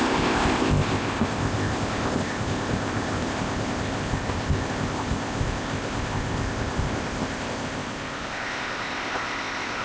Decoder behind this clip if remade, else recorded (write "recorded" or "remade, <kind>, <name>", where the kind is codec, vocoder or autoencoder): remade, codec, ZipCodec